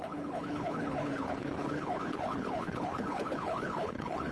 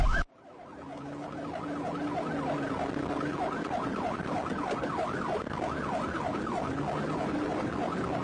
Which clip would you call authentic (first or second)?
second